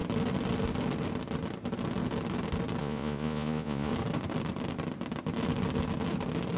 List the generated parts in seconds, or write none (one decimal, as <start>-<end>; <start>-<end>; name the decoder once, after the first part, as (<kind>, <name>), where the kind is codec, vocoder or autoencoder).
2.8-3.9 (vocoder, Vocos)